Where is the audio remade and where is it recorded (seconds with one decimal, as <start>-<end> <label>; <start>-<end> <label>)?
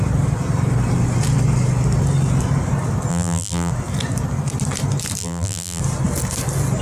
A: 0.0-3.1 recorded; 3.1-3.7 remade; 3.7-5.2 recorded; 5.2-5.8 remade; 5.8-6.8 recorded